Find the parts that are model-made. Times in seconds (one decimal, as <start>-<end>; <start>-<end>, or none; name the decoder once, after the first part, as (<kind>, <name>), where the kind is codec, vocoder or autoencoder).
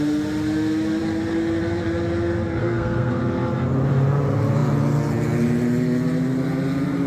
2.6-3.2 (codec, SNAC)